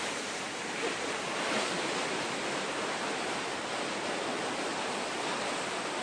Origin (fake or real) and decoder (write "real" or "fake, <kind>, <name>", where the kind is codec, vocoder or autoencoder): real